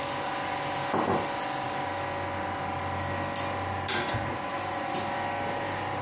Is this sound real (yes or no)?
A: yes